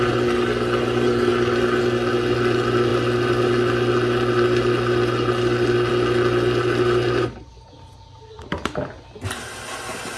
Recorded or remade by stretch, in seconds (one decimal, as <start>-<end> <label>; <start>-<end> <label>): 0.0-10.2 recorded